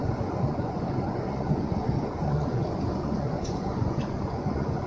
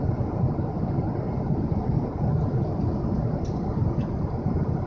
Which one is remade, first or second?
first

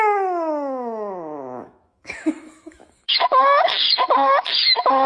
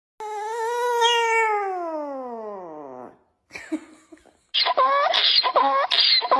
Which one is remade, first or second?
first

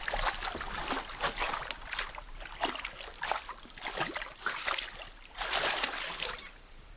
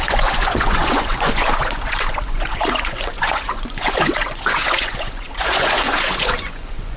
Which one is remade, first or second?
second